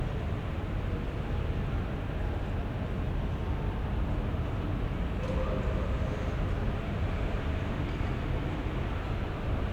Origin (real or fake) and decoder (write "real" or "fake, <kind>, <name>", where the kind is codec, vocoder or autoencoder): real